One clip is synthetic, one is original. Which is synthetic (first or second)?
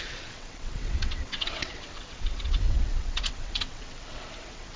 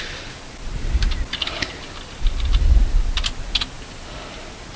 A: first